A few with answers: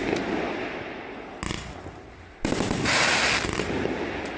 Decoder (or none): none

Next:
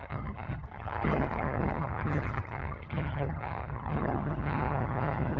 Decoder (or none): vocoder, HiFi-GAN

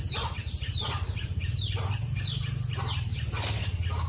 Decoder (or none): none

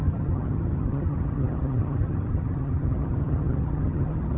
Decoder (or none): vocoder, HiFi-GAN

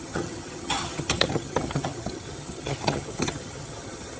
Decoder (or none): vocoder, HiFi-GAN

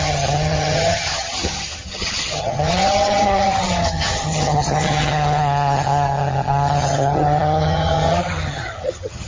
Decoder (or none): vocoder, HiFi-GAN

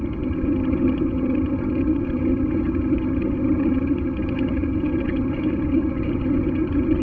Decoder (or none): vocoder, HiFi-GAN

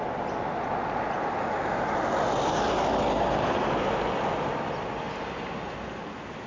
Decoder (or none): none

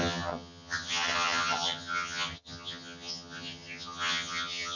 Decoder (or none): vocoder, HiFi-GAN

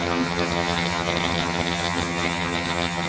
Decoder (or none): vocoder, HiFi-GAN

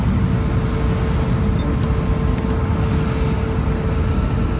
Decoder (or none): none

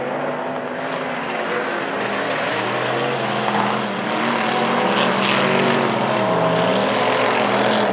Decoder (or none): none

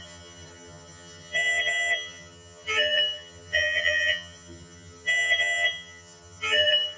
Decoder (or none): vocoder, HiFi-GAN